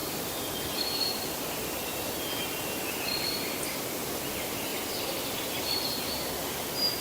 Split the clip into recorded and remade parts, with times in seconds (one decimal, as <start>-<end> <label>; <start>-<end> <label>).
0.0-4.7 recorded; 4.7-6.1 remade; 6.1-7.0 recorded